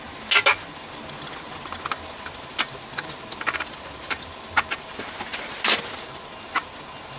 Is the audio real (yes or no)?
yes